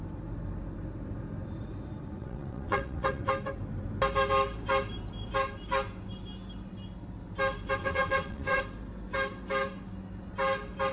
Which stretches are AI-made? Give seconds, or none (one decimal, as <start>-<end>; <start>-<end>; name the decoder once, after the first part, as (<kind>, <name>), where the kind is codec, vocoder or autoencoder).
2.2-3.3 (vocoder, WaveNeXt); 7.8-8.6